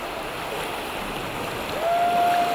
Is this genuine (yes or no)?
yes